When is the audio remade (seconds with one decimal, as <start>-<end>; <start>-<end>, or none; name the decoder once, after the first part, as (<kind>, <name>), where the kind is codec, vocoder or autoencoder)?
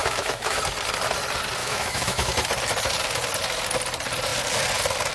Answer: 0.0-0.6 (autoencoder, DAC-VAE); 1.6-2.3